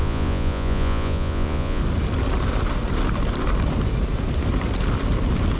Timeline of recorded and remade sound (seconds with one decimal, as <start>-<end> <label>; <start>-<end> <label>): 0.0-1.8 remade; 1.8-5.6 recorded